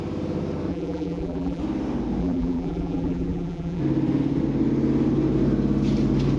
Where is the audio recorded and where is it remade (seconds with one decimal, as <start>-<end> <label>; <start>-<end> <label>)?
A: 0.0-0.7 recorded; 0.7-1.6 remade; 1.6-2.2 recorded; 2.2-3.8 remade; 3.8-6.4 recorded

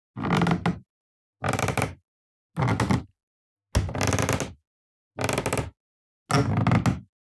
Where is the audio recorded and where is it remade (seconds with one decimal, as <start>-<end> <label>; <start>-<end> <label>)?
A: 0.0-7.2 recorded

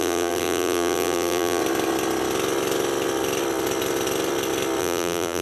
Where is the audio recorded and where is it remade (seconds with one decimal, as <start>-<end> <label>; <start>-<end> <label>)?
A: 0.0-1.6 remade; 1.6-4.8 recorded; 4.8-5.4 remade

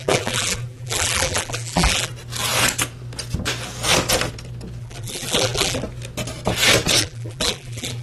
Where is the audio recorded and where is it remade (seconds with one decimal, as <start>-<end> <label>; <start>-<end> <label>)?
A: 0.0-2.1 remade; 2.1-4.8 recorded; 4.8-5.8 remade; 5.8-7.0 recorded; 7.0-8.0 remade

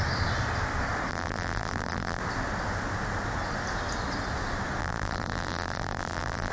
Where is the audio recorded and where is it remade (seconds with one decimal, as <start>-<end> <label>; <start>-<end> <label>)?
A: 0.0-1.1 recorded; 1.1-2.2 remade; 2.2-4.8 recorded; 4.8-6.5 remade

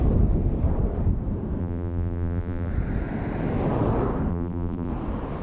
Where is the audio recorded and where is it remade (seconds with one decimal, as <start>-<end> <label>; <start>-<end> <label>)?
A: 0.0-1.6 recorded; 1.6-2.7 remade; 2.7-4.3 recorded; 4.3-4.9 remade; 4.9-5.4 recorded

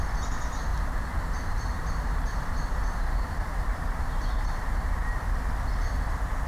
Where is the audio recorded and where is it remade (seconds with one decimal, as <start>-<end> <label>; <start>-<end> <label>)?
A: 0.0-0.7 recorded; 0.7-4.6 remade; 4.6-6.5 recorded